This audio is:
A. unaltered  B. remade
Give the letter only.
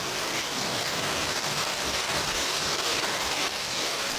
B